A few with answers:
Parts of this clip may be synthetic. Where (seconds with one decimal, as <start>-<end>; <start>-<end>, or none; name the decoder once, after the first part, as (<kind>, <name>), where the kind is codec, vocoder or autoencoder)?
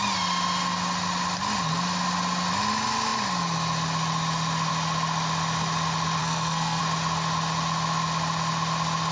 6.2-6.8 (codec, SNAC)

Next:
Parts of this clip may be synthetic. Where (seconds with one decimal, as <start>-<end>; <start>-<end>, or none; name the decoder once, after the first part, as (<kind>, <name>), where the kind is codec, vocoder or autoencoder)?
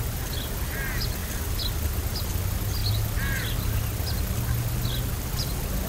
none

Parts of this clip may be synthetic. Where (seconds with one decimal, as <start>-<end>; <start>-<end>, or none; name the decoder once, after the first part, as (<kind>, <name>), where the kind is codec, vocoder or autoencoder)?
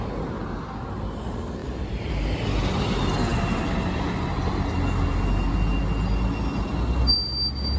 1.6-2.1 (vocoder, BigVGAN v2); 3.3-4.2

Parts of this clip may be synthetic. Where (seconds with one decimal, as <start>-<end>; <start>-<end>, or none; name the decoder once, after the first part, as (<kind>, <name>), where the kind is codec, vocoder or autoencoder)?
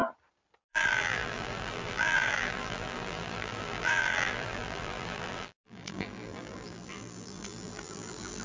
0.7-8.4 (vocoder, BigVGAN v2)